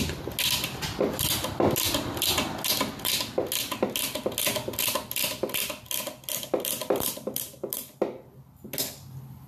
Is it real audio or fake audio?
real